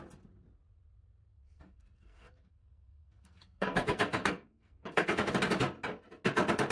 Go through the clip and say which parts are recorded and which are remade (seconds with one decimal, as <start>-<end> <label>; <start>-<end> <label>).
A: 0.0-1.3 recorded; 1.3-5.3 remade; 5.3-6.7 recorded